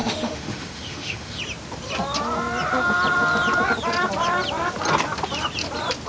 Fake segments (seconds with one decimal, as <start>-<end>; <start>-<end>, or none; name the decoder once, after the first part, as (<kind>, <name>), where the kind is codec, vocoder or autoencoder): 0.0-1.4 (autoencoder, DAC-VAE)